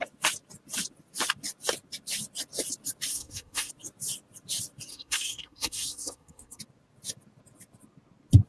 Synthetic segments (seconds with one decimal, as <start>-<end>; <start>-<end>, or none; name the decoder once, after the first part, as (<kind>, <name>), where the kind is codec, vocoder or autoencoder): 3.1-3.7 (codec, SNAC); 4.9-6.6